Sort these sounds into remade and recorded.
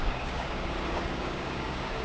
remade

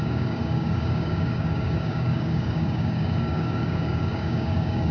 remade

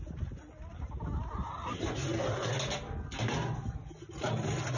recorded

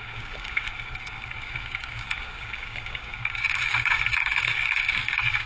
remade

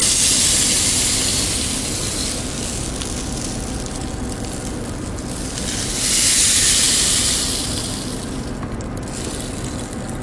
recorded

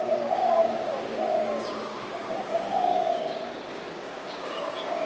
remade